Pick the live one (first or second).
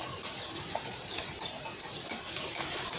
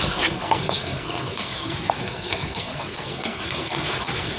first